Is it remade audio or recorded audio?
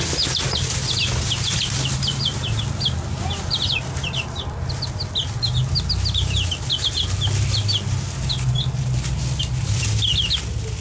recorded